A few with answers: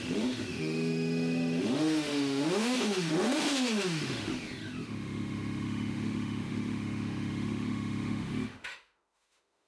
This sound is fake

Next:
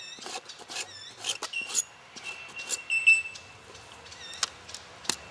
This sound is real